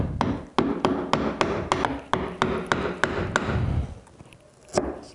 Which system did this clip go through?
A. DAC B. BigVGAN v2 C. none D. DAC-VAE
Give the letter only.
C